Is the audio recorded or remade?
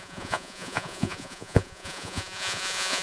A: remade